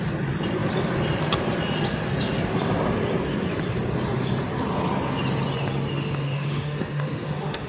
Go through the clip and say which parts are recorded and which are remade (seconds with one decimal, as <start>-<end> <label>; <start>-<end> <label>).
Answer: 0.0-5.9 recorded; 5.9-7.7 remade